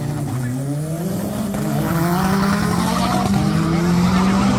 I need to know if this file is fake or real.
real